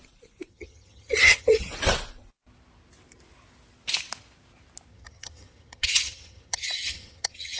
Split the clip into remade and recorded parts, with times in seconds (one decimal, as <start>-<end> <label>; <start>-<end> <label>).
0.0-0.5 recorded; 0.5-1.7 remade; 1.7-4.9 recorded; 4.9-7.6 remade

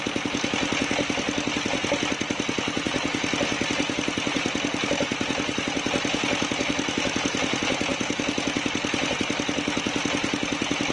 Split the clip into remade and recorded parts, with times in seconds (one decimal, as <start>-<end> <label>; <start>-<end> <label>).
0.0-10.9 recorded